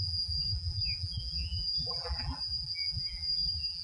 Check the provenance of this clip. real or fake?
fake